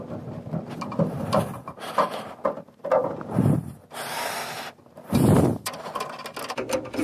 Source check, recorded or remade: recorded